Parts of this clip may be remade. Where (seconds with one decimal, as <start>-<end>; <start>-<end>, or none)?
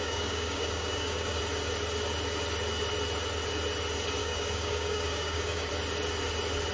0.0-1.4; 4.2-5.7